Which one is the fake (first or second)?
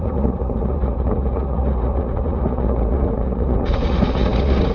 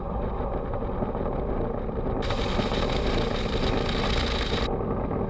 first